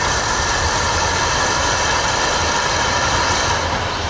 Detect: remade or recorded recorded